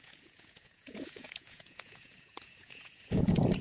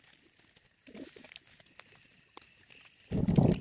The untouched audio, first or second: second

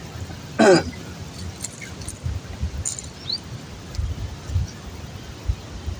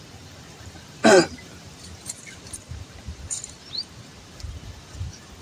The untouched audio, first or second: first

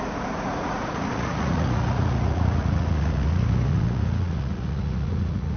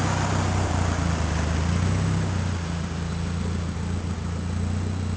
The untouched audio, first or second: second